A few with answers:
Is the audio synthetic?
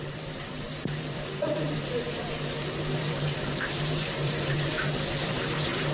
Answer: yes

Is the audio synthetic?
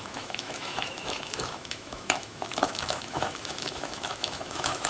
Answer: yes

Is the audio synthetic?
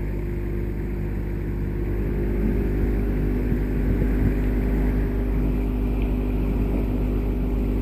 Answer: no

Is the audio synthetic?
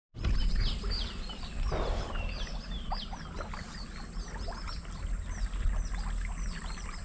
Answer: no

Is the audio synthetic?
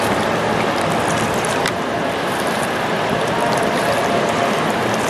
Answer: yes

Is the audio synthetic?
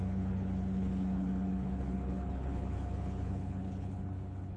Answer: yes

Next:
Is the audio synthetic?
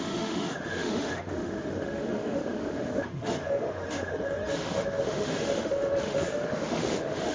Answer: yes